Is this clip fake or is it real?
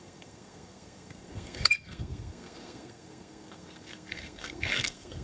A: fake